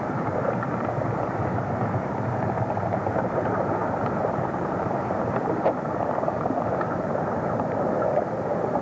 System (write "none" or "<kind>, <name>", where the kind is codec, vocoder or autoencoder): vocoder, BigVGAN v2